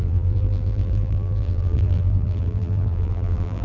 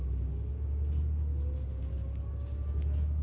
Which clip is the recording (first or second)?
second